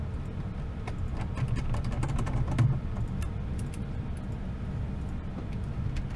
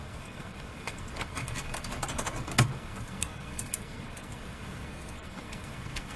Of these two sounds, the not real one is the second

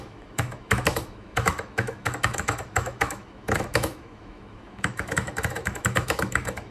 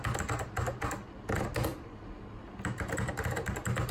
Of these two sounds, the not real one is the first